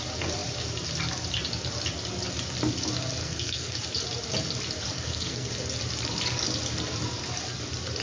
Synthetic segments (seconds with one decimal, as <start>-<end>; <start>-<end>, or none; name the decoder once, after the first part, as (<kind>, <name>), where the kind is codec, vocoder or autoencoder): 3.2-3.8 (codec, SNAC); 4.9-5.5